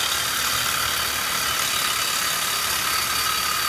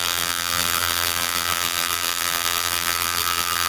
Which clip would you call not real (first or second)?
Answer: second